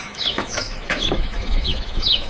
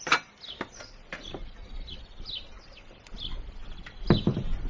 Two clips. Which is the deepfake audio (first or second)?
first